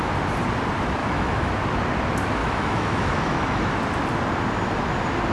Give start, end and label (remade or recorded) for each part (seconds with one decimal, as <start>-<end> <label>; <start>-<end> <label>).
0.0-1.0 recorded; 1.0-1.5 remade; 1.5-2.4 recorded; 2.4-3.7 remade; 3.7-5.3 recorded